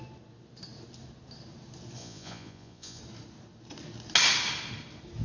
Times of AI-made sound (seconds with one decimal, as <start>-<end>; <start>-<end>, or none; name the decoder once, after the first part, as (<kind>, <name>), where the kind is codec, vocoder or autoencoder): 2.0-3.0 (vocoder, Vocos)